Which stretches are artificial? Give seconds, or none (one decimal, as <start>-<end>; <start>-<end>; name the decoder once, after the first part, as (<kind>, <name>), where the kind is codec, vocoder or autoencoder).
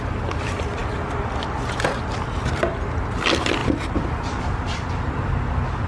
3.6-4.4 (vocoder, BigVGAN v2)